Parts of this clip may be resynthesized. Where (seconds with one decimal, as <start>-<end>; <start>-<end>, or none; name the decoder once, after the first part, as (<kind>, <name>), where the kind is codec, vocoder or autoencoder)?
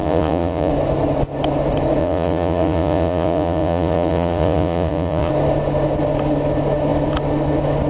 0.0-0.7 (vocoder, Vocos); 2.0-5.3